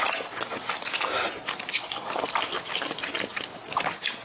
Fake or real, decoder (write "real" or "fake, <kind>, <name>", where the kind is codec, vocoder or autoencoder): real